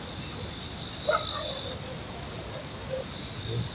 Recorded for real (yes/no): yes